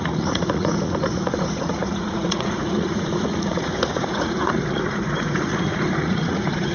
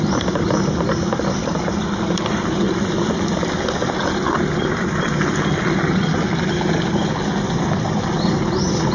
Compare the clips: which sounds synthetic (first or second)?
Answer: first